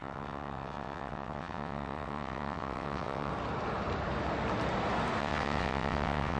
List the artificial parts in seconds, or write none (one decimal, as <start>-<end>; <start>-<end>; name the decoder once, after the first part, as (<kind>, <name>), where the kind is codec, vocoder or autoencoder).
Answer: 0.0-3.3 (vocoder, WaveNeXt); 5.2-6.4